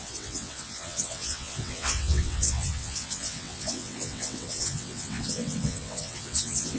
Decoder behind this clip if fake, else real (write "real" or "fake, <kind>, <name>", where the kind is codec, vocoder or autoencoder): fake, vocoder, WaveNeXt